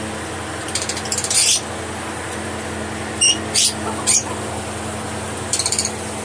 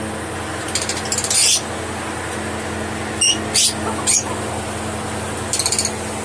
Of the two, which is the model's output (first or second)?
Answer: first